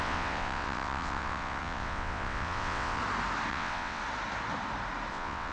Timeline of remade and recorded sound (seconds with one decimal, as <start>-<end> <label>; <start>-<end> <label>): 0.0-3.0 remade; 3.0-3.5 recorded; 3.5-4.0 remade; 4.0-5.1 recorded; 5.1-5.5 remade